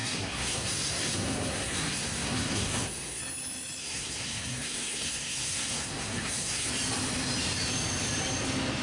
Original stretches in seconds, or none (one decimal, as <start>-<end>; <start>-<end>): 3.2-3.8; 6.7-8.8